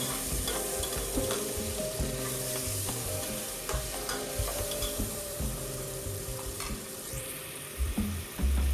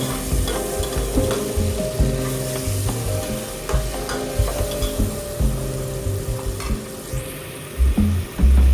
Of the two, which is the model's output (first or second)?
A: first